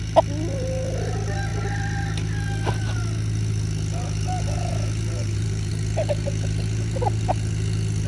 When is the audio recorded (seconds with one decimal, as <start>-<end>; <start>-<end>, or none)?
0.0-5.2; 5.7-8.1